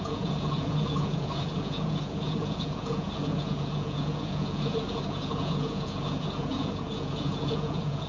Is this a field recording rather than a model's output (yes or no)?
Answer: no